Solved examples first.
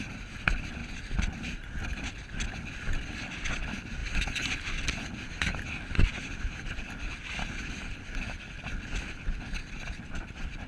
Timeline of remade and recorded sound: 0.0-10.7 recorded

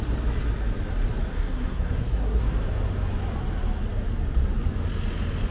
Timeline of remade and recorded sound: 0.0-1.3 recorded; 1.3-2.4 remade; 2.4-5.5 recorded

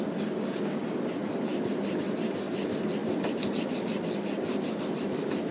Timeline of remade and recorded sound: 0.0-5.5 recorded

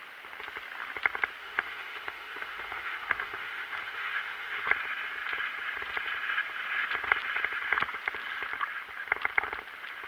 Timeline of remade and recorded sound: 0.0-1.4 recorded; 1.4-4.7 remade; 4.7-10.1 recorded

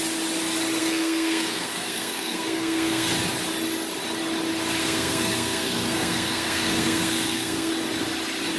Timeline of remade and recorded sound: 0.0-0.8 recorded; 0.8-3.1 remade; 3.1-4.8 recorded; 4.8-7.7 remade; 7.7-8.6 recorded

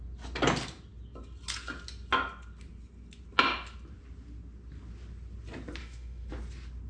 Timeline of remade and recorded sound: 0.0-5.8 recorded; 5.8-6.3 remade; 6.3-6.9 recorded